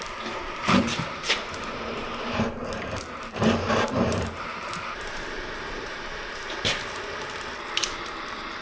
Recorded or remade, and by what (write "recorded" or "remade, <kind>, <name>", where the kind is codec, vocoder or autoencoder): remade, vocoder, BigVGAN v2